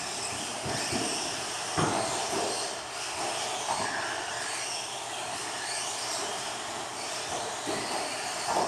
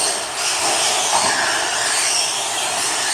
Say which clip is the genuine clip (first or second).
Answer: second